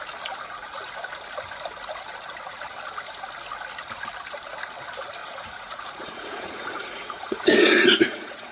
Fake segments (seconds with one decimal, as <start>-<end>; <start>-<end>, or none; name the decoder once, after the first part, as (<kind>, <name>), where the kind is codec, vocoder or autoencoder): 5.2-8.5 (vocoder, Vocos)